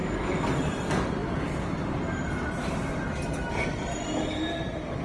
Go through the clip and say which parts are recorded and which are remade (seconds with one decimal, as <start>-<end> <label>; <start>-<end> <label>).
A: 0.0-5.0 recorded